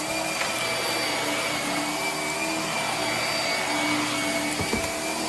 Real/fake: real